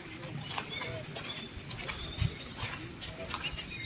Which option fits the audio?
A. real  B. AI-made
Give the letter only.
A